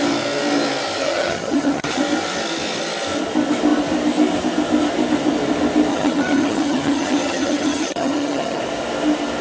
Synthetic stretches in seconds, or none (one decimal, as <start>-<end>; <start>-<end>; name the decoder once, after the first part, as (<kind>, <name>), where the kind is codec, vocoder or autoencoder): 1.0-2.0 (vocoder, HiFi-GAN); 5.9-8.6